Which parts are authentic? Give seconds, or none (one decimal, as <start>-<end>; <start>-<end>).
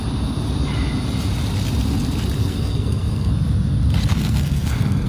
0.0-2.4; 3.3-4.1